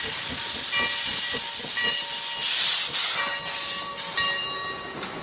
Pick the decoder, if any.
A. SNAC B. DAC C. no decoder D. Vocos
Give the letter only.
C